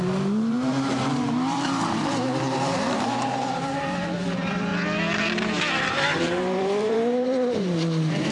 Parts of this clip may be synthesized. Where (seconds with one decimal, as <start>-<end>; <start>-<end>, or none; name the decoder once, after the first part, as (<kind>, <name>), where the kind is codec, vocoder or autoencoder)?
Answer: 0.0-4.7 (vocoder, BigVGAN v2); 5.8-8.3

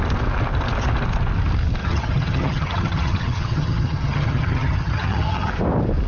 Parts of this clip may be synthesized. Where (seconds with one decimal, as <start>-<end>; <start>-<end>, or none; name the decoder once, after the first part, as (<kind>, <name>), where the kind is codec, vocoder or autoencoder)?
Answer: 1.8-5.5 (vocoder, HiFi-GAN)

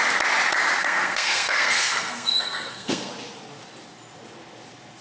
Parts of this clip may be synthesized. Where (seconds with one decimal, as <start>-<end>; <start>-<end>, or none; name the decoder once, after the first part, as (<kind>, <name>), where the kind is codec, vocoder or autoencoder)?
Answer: 0.8-3.1 (codec, SNAC)

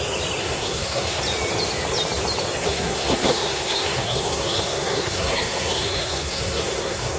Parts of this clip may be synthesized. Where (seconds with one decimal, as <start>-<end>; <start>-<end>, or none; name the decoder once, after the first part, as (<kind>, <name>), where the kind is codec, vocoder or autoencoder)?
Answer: 0.4-1.2 (codec, SNAC); 2.6-7.2

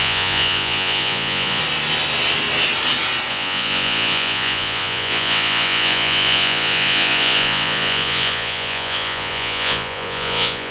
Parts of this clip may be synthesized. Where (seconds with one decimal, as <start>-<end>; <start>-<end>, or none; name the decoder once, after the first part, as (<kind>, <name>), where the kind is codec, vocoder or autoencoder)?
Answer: 0.0-1.6 (vocoder, Vocos); 3.3-10.7

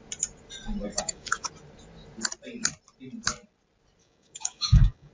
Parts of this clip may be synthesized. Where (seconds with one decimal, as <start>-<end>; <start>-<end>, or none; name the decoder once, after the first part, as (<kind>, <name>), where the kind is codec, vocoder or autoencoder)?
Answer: 0.9-1.5 (codec, DAC); 4.0-5.1

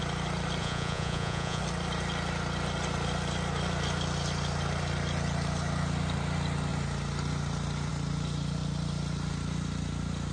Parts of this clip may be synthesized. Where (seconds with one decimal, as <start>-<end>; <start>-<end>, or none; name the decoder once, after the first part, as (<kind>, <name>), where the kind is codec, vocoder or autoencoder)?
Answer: 0.6-1.6 (vocoder, Vocos)

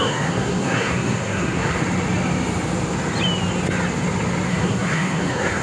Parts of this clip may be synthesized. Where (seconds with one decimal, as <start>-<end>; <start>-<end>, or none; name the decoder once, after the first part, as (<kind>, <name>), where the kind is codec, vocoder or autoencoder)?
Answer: 0.0-1.8 (codec, SNAC); 4.5-5.6